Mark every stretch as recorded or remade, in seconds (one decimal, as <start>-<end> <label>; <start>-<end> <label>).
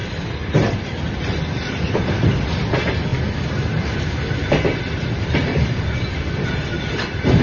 0.0-2.7 remade; 2.7-3.1 recorded; 3.1-6.9 remade; 6.9-7.4 recorded